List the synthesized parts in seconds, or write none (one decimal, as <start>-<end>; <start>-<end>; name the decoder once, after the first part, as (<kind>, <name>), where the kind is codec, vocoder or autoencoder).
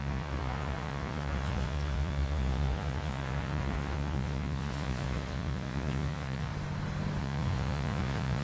0.0-6.5 (vocoder, Vocos); 7.2-8.4